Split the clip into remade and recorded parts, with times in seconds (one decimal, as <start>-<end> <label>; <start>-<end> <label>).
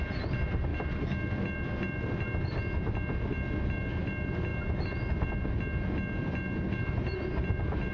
0.0-7.9 recorded